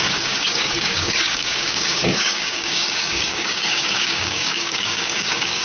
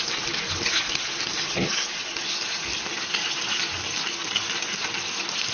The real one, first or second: second